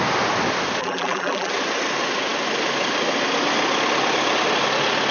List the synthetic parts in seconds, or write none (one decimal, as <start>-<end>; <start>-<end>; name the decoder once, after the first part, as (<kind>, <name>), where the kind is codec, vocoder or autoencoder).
0.8-1.5 (vocoder, BigVGAN v2)

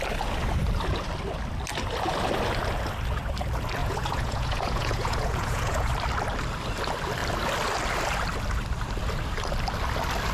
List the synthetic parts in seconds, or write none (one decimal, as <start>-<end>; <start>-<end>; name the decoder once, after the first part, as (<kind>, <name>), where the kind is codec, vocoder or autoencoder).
3.8-5.9 (vocoder, Vocos)

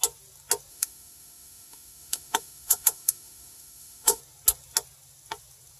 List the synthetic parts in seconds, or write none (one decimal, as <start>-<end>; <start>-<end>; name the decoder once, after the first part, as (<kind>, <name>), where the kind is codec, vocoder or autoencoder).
0.7-4.2 (autoencoder, DAC-VAE)

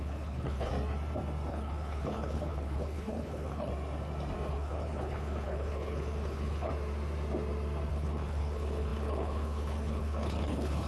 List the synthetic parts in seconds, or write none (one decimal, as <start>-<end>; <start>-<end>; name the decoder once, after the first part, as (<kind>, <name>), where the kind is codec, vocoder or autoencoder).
0.0-0.7 (codec, HILCodec); 1.5-3.7; 4.5-6.7; 7.9-10.9

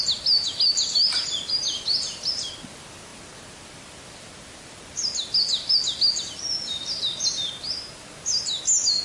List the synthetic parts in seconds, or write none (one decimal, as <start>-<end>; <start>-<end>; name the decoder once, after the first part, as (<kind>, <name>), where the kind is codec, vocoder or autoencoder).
none

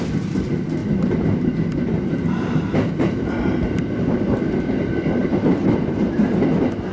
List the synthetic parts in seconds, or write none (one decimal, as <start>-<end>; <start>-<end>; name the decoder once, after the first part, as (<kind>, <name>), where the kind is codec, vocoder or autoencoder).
0.8-4.4 (vocoder, BigVGAN v2); 5.2-6.0

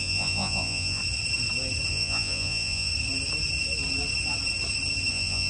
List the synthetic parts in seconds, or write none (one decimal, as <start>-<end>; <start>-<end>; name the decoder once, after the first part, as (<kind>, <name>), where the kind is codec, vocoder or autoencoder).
0.0-1.0 (vocoder, Vocos); 1.9-2.9; 5.1-5.5

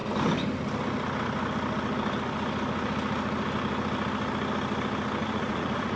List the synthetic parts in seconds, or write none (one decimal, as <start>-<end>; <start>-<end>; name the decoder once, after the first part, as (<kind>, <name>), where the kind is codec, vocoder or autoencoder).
5.2-6.0 (vocoder, Vocos)